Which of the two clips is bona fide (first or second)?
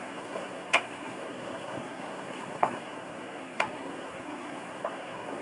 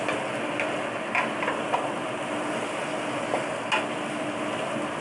second